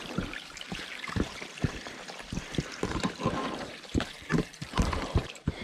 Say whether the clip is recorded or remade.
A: remade